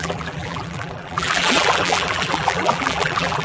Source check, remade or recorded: remade